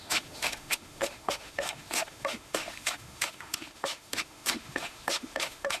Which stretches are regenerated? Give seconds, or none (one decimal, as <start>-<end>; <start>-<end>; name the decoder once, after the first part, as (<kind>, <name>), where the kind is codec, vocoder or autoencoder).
0.0-5.8 (autoencoder, DAC-VAE)